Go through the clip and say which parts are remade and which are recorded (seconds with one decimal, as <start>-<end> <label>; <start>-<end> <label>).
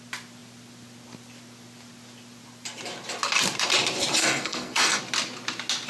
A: 0.0-4.2 recorded; 4.2-5.0 remade; 5.0-5.9 recorded